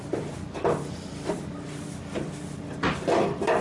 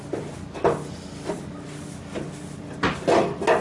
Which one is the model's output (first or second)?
first